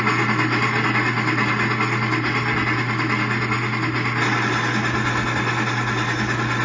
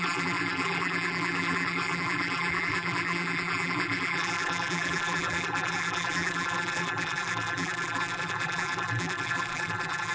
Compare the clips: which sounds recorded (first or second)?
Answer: first